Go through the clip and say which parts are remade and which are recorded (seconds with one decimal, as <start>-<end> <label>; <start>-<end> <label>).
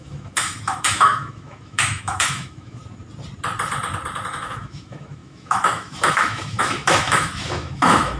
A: 0.0-2.8 remade; 2.8-4.3 recorded; 4.3-8.2 remade